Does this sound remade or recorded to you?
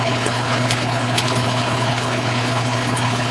remade